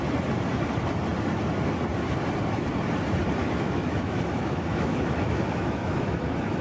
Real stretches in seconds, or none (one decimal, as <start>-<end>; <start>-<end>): 0.0-3.4